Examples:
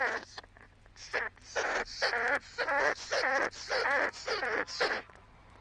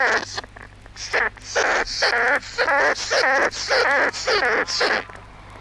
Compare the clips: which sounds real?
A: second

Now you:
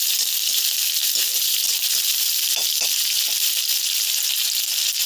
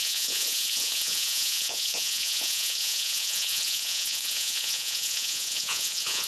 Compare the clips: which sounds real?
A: first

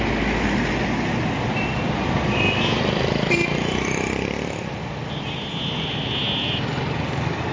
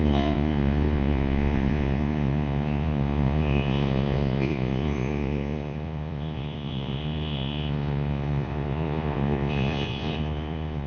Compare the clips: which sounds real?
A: first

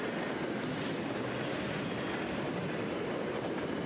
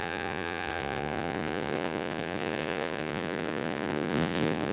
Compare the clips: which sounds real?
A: first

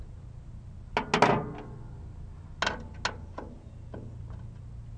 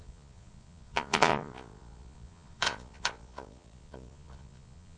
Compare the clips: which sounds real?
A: first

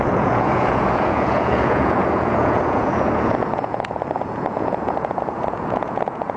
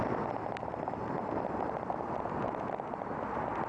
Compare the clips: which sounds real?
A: second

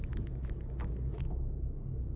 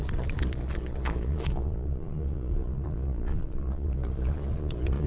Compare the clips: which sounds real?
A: first